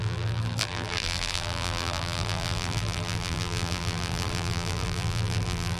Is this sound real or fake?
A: fake